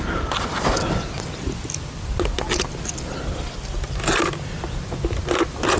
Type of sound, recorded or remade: recorded